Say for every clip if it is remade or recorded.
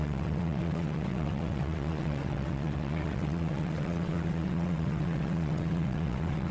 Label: remade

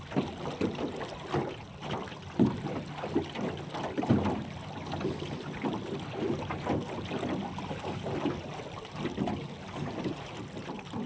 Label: recorded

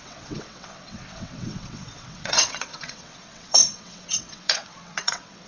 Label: remade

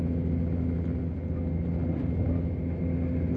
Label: recorded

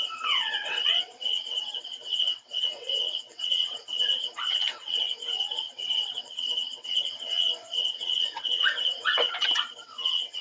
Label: remade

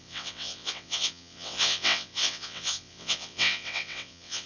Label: remade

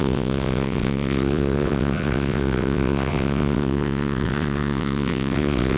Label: remade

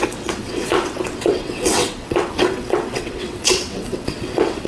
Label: remade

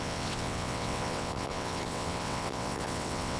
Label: remade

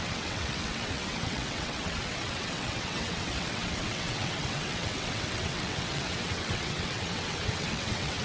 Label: remade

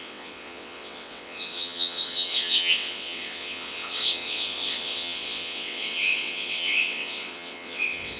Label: remade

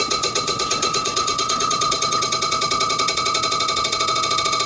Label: remade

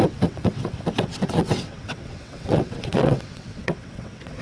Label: remade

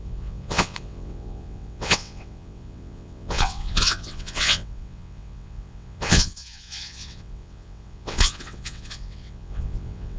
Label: remade